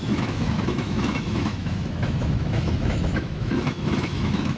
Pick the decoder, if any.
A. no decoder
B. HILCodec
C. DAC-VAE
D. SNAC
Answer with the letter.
C